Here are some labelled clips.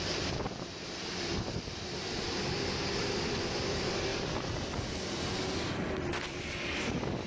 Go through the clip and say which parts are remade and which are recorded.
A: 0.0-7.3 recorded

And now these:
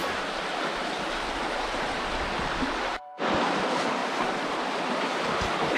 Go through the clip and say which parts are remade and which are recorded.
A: 0.0-4.0 recorded; 4.0-4.8 remade; 4.8-5.8 recorded